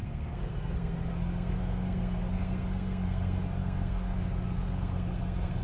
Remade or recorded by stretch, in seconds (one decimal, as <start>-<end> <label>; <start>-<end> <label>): 0.0-5.6 remade